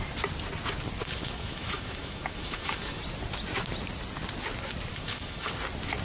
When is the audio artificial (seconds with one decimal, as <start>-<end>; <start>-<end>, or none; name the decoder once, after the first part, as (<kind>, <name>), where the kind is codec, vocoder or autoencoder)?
1.0-3.0 (autoencoder, DAC-VAE); 4.9-5.5